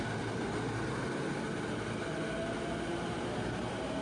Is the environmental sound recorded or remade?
recorded